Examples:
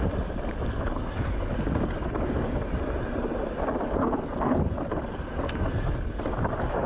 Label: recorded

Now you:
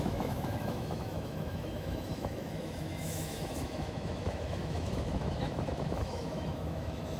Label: remade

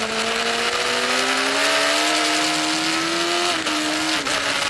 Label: recorded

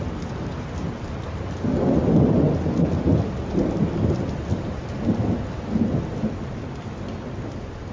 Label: recorded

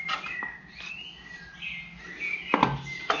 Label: recorded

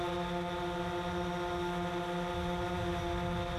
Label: recorded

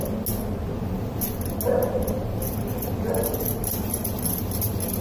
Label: recorded